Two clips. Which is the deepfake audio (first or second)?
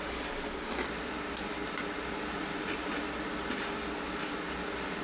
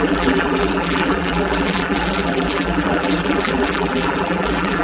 second